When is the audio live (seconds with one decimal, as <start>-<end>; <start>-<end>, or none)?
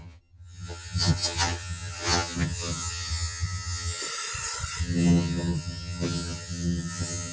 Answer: 4.0-4.8